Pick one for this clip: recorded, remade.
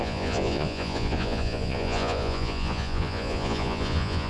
remade